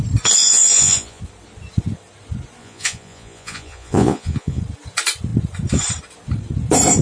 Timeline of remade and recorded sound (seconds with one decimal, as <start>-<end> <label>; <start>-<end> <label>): 0.0-0.4 recorded; 0.4-1.2 remade; 1.2-2.6 recorded; 2.6-4.6 remade; 4.6-7.0 recorded